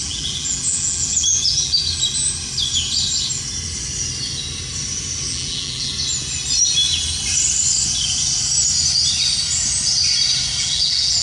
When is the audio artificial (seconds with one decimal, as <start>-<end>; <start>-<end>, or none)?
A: 0.0-1.8; 5.3-5.9; 10.6-11.2